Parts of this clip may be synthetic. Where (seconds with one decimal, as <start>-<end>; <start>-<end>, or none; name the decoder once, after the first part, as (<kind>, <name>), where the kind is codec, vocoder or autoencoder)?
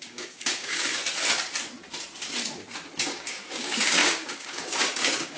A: 0.0-1.0 (codec, DAC); 3.0-5.4